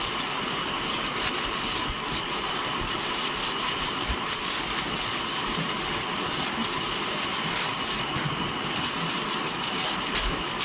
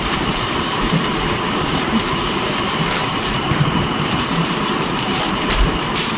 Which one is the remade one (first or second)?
second